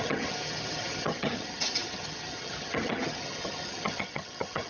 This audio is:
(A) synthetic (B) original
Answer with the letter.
A